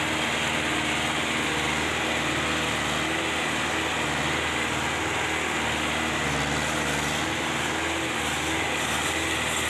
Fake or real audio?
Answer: real